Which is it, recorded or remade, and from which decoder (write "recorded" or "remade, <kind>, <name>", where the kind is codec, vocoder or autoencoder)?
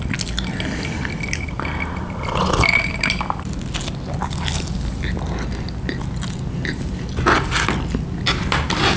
recorded